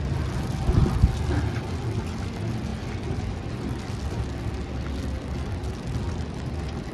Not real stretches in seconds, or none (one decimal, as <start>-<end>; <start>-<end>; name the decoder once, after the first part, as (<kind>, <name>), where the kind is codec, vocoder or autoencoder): none

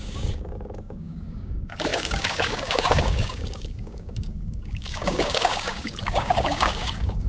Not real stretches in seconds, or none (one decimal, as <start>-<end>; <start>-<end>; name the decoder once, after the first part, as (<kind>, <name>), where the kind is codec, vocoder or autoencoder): 0.0-7.3 (codec, DAC)

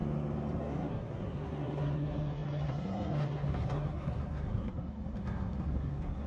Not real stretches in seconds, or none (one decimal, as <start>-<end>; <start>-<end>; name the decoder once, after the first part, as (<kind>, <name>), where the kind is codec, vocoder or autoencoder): 0.6-6.3 (codec, SNAC)

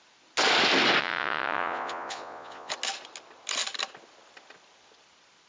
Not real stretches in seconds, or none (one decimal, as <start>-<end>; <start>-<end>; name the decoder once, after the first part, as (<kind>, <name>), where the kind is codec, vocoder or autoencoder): 1.0-2.7 (vocoder, Vocos)